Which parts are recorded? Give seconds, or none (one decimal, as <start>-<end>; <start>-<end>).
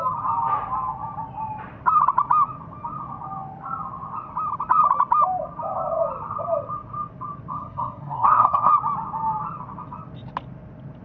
0.0-7.5; 8.7-11.0